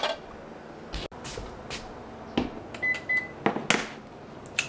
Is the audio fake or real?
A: real